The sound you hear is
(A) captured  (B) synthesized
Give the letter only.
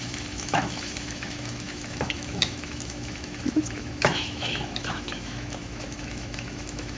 B